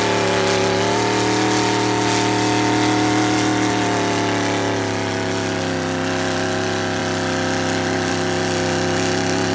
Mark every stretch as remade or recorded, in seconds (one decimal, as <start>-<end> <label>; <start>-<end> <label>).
0.0-9.5 recorded